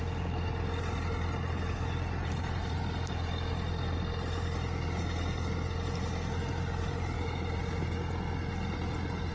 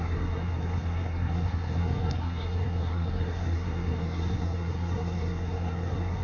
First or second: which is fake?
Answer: second